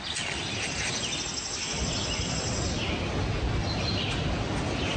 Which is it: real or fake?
real